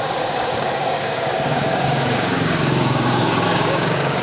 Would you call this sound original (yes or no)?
no